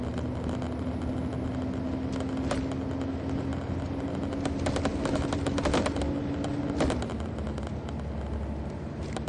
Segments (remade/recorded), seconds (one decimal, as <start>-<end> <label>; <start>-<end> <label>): 0.0-9.3 recorded

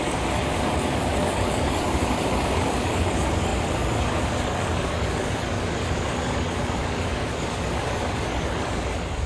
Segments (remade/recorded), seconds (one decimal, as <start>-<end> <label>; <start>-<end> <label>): 0.0-9.3 remade

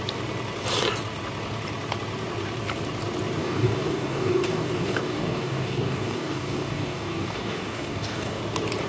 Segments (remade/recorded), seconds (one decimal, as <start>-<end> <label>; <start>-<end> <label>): 0.0-3.4 recorded; 3.4-8.4 remade; 8.4-8.9 recorded

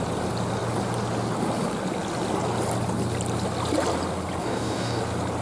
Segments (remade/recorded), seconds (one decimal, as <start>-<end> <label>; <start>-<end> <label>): 0.0-4.4 recorded; 4.4-5.0 remade; 5.0-5.4 recorded

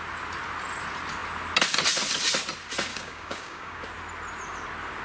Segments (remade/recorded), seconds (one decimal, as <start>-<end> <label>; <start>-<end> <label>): 0.0-2.9 recorded; 2.9-3.8 remade; 3.8-5.0 recorded

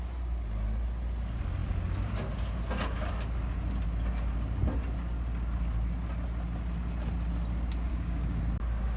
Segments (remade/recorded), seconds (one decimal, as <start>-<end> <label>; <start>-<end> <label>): 0.0-7.9 recorded; 7.9-8.4 remade; 8.4-9.0 recorded

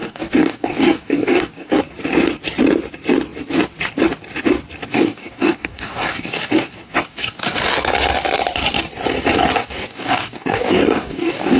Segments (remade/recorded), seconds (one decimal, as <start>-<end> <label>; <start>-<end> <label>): 0.0-1.8 remade; 1.8-4.9 recorded; 4.9-7.7 remade; 7.7-9.6 recorded; 9.6-11.6 remade